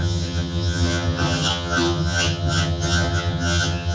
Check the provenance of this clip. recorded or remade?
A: remade